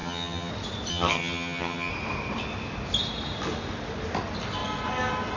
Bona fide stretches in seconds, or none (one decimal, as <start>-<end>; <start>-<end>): 0.5-0.9; 1.9-5.4